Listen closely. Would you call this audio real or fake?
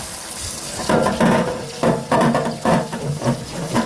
real